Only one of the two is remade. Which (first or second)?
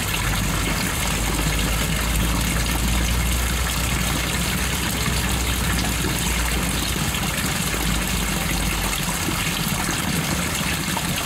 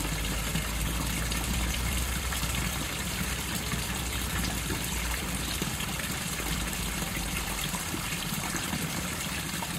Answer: second